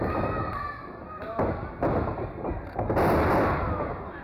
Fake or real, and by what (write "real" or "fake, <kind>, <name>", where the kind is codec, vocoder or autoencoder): real